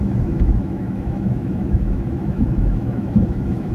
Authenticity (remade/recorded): remade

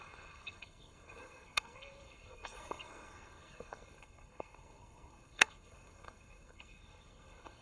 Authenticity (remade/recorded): remade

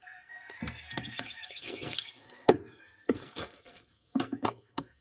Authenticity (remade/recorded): remade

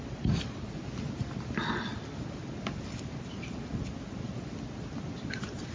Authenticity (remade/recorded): recorded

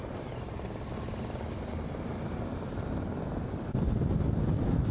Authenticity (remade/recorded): recorded